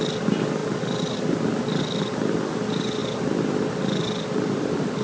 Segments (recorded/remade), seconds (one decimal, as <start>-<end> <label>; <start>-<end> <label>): 0.0-5.0 recorded